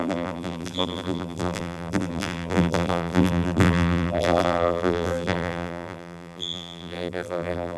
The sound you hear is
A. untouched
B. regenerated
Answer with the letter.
B